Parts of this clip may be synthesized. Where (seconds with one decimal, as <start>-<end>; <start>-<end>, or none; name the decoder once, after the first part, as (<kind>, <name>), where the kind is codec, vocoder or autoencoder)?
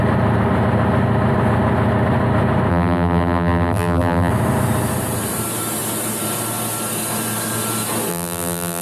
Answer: 2.7-4.3 (vocoder, BigVGAN v2); 8.1-8.8